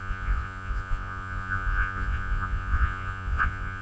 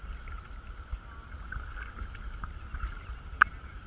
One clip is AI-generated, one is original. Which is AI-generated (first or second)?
first